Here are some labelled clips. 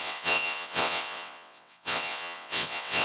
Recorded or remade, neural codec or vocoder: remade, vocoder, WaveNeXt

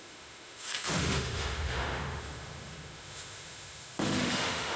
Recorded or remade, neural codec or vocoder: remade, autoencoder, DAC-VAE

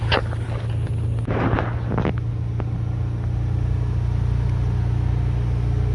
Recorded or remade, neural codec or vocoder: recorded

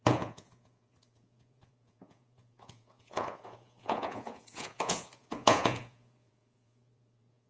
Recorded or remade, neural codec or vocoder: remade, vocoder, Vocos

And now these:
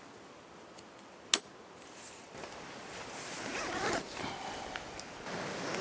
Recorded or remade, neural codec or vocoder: recorded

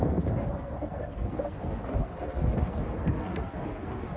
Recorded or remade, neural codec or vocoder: remade, codec, SNAC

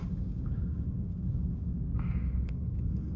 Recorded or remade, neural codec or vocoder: remade, codec, DAC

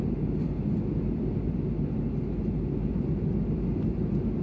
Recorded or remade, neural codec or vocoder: recorded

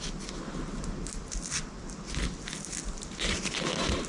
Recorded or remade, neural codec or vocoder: recorded